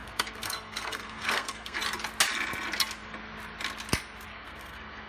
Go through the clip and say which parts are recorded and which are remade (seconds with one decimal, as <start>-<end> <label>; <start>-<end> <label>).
0.0-1.8 remade; 1.8-4.3 recorded; 4.3-5.1 remade